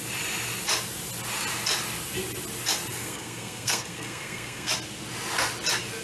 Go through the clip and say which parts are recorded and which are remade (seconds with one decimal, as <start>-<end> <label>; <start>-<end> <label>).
0.0-2.9 recorded; 2.9-4.7 remade; 4.7-6.0 recorded